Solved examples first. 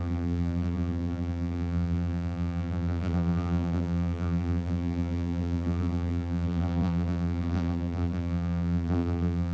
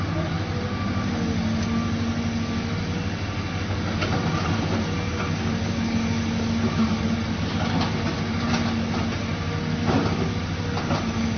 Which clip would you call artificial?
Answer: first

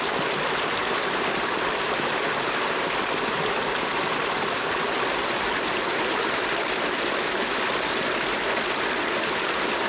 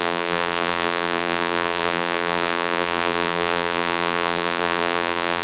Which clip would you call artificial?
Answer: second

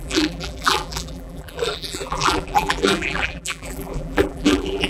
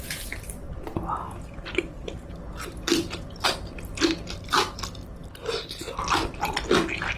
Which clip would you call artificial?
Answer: first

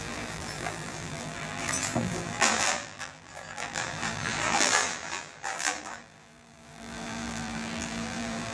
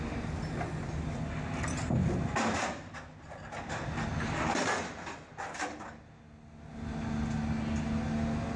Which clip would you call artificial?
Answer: first